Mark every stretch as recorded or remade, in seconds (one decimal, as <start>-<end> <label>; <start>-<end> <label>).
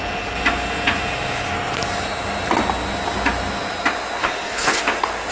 0.0-4.2 recorded; 4.2-4.8 remade; 4.8-5.3 recorded